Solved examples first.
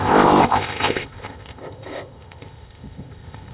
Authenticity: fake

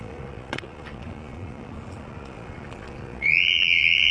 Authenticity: fake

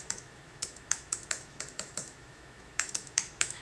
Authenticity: fake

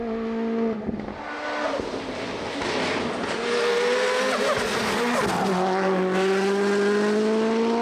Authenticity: real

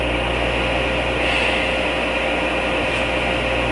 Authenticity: real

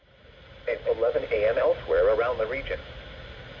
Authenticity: real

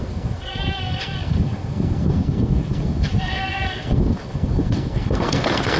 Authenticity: fake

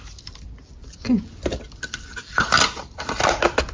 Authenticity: real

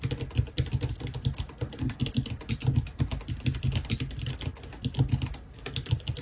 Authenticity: real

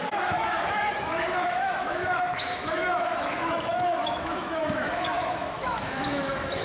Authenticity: fake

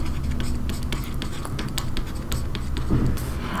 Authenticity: real